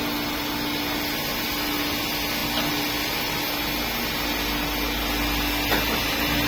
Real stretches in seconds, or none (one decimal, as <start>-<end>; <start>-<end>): 0.0-6.5